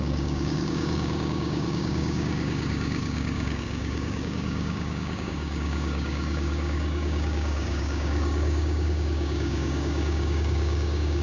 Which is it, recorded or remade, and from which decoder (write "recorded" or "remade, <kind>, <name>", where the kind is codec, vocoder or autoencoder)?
remade, codec, DAC